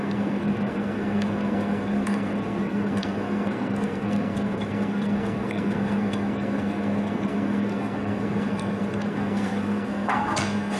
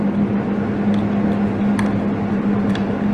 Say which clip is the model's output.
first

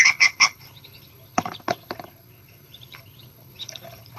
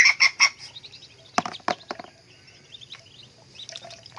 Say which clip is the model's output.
first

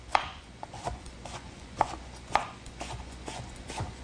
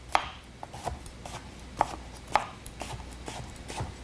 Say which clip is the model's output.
first